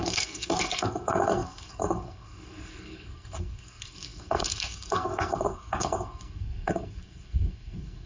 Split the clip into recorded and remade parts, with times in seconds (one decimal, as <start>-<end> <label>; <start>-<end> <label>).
0.0-8.1 remade

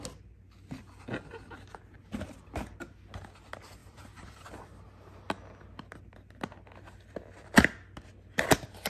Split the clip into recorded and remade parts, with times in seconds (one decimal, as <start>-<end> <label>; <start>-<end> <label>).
0.0-3.8 recorded; 3.8-4.5 remade; 4.5-8.9 recorded